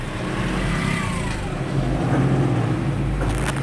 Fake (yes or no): no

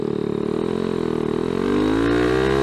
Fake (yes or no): no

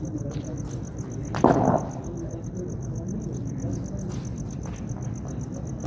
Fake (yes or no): no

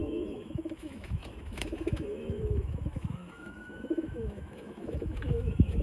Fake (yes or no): yes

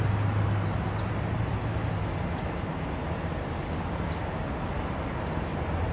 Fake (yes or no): no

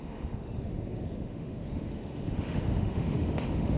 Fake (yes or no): yes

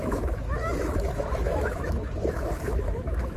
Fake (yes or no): yes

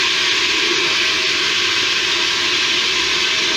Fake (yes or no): no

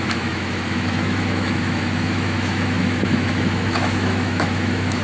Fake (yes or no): yes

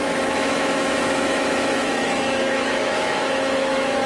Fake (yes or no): yes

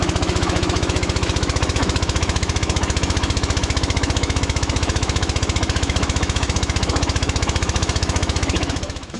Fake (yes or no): yes